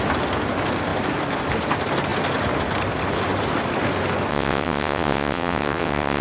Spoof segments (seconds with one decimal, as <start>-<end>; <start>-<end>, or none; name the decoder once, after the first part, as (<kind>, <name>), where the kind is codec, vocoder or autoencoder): 4.3-6.2 (vocoder, WaveNeXt)